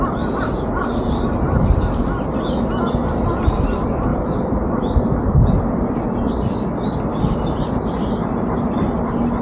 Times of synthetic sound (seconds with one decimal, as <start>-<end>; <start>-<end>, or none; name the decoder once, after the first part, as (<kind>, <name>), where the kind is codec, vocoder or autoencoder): 4.1-5.9 (vocoder, BigVGAN v2); 7.1-8.7